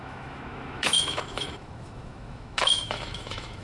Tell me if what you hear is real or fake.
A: fake